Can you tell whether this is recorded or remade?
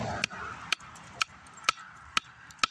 recorded